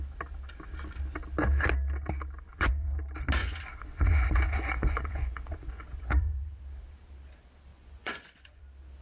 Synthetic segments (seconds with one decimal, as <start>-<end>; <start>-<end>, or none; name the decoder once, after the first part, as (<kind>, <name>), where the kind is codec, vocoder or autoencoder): 2.5-3.0 (vocoder, Vocos); 3.4-6.6; 7.7-8.6

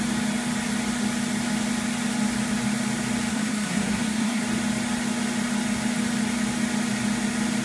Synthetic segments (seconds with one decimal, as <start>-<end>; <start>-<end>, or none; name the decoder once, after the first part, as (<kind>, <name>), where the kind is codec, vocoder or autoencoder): 3.3-4.4 (codec, SNAC)

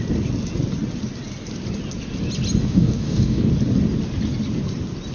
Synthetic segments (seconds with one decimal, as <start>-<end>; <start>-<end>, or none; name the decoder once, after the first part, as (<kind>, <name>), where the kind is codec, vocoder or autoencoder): 2.6-3.5 (codec, DAC)